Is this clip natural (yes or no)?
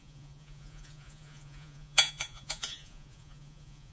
no